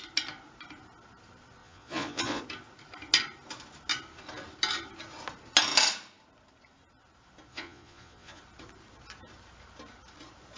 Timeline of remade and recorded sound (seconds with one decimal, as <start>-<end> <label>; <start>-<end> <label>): 0.0-1.6 recorded; 1.6-2.4 remade; 2.4-7.5 recorded; 7.5-8.4 remade; 8.4-10.6 recorded